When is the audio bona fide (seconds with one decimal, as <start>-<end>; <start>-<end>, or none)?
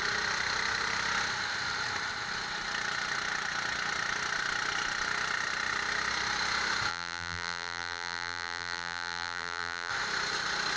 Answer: 0.0-6.9; 9.9-10.8